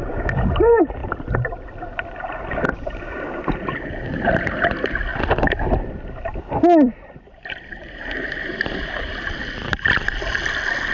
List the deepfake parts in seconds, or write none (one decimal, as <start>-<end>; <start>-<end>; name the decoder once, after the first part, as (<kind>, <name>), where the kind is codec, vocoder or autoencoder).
none